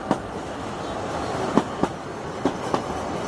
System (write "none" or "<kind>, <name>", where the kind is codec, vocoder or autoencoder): none